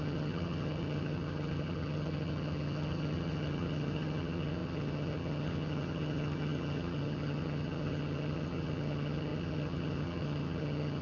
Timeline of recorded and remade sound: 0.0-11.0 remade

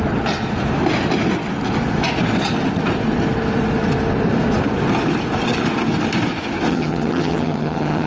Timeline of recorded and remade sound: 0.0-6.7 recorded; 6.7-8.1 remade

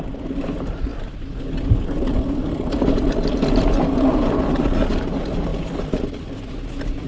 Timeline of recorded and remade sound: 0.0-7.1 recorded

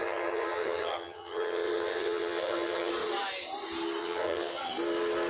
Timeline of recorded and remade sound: 0.0-2.9 remade; 2.9-4.0 recorded; 4.0-4.7 remade; 4.7-5.3 recorded

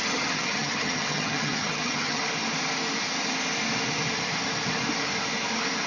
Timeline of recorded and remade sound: 0.0-2.2 remade; 2.2-5.9 recorded

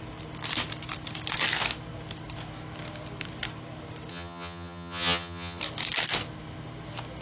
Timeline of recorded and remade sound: 0.0-4.1 recorded; 4.1-5.6 remade; 5.6-7.2 recorded

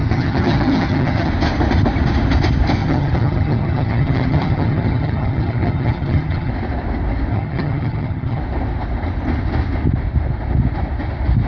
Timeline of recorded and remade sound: 0.0-1.3 remade; 1.3-2.8 recorded; 2.8-6.5 remade; 6.5-7.3 recorded; 7.3-8.4 remade; 8.4-11.5 recorded